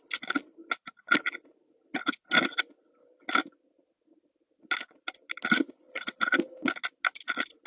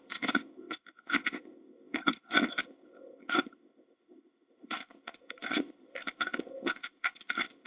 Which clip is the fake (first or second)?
second